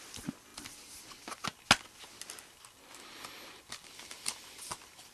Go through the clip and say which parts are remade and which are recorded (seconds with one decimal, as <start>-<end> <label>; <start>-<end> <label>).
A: 0.0-5.1 recorded